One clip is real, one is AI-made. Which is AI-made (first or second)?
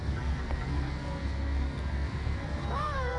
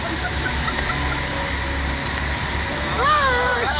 first